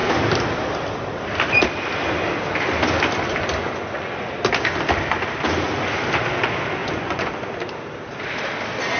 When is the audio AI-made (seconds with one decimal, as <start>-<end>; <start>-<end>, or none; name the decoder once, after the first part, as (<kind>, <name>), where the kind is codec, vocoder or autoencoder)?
3.6-4.3 (vocoder, Vocos); 6.8-7.3